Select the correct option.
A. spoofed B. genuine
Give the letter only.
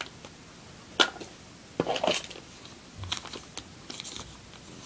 B